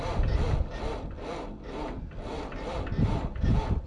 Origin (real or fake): fake